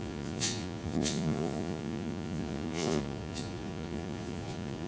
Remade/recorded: remade